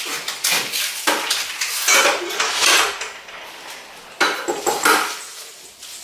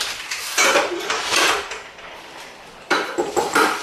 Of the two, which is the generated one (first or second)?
second